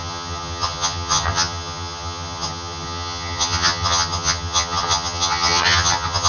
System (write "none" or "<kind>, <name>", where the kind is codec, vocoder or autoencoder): vocoder, HiFi-GAN